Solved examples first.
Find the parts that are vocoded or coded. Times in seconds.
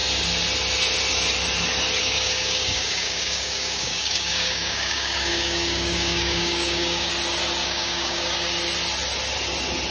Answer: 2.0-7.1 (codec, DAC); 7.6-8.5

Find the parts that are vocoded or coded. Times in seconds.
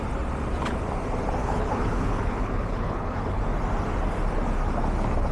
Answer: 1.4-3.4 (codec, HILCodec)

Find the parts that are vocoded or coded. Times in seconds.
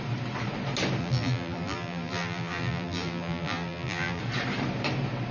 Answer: 1.0-4.2 (vocoder, BigVGAN v2)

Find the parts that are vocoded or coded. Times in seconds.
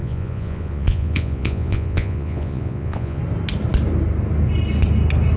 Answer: 0.0-3.2 (vocoder, Vocos)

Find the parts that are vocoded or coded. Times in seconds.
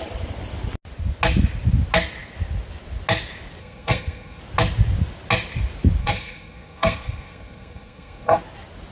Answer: 3.6-4.4 (codec, SNAC); 6.0-8.4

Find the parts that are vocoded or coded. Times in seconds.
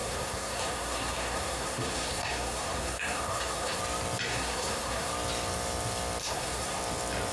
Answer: 0.0-3.8 (codec, SNAC); 4.3-5.1; 6.2-6.8